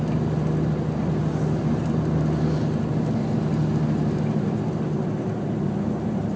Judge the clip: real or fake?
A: real